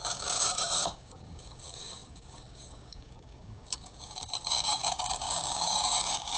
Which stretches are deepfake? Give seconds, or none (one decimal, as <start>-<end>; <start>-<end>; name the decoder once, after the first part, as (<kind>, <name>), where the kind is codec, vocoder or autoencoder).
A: 0.0-6.4 (codec, DAC)